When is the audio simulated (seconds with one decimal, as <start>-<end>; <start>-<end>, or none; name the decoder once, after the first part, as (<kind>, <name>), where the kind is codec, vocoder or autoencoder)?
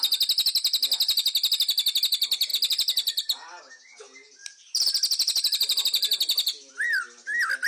2.5-3.6 (vocoder, BigVGAN v2); 4.4-6.7